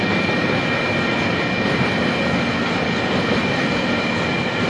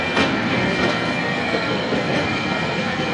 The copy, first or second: second